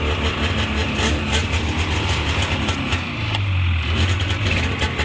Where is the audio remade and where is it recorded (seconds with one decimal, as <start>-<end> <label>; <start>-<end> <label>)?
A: 0.0-5.0 recorded